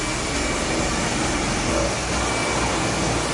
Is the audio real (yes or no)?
yes